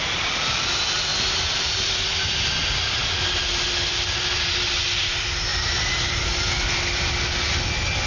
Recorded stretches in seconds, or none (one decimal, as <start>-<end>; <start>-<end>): 0.7-1.1; 2.0-3.0; 4.1-5.5; 7.2-8.1